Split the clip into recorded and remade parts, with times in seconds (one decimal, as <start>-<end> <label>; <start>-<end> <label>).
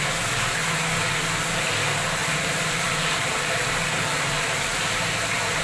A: 0.0-2.2 recorded; 2.2-5.6 remade